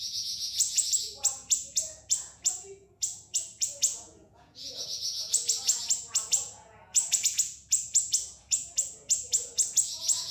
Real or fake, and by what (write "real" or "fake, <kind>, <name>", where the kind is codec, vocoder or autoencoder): fake, vocoder, Vocos